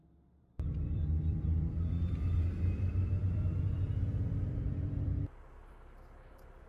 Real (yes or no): no